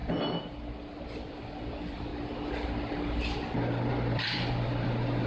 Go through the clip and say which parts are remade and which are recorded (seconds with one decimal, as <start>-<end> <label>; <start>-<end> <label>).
0.0-1.0 recorded; 1.0-2.1 remade; 2.1-3.9 recorded; 3.9-5.3 remade